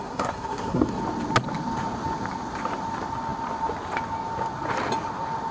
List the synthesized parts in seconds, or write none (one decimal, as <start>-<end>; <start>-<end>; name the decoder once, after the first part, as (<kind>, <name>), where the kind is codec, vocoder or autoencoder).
0.0-1.0 (codec, SNAC)